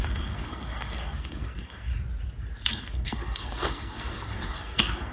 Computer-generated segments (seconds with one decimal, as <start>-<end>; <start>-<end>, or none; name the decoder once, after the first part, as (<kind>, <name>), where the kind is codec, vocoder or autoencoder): 0.0-1.9 (codec, SNAC); 2.7-5.1